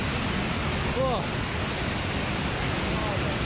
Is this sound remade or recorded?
recorded